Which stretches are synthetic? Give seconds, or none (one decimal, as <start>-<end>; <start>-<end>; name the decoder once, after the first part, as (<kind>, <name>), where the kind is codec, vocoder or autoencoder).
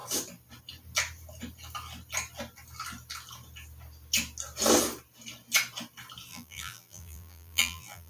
6.3-8.1 (vocoder, BigVGAN v2)